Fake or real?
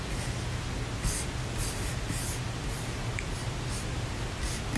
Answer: real